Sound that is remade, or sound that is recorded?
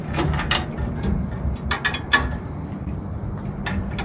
recorded